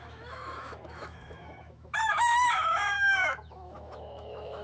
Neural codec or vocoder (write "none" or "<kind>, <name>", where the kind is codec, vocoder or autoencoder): autoencoder, DAC-VAE